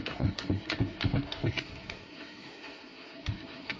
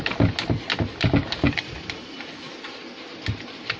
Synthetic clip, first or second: first